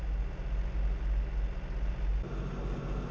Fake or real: real